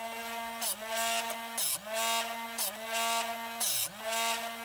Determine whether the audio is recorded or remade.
recorded